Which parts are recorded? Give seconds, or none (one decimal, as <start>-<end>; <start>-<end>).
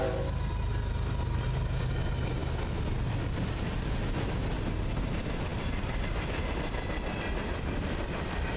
0.0-8.6